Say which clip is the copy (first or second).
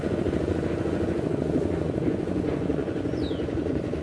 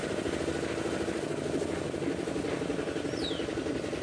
first